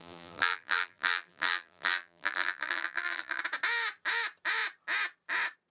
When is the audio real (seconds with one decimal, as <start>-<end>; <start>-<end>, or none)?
3.4-5.7